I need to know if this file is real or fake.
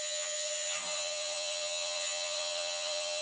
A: fake